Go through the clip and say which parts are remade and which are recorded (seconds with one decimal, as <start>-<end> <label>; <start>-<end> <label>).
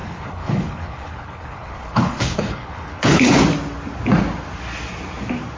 0.0-3.4 remade; 3.4-5.6 recorded